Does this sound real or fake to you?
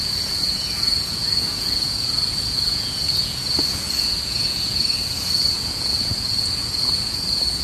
fake